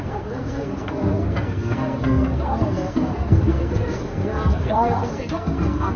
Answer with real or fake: fake